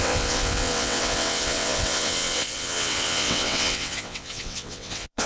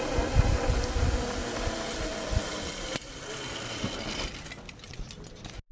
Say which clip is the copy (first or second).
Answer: first